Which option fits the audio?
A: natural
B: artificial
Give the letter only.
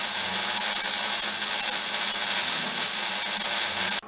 A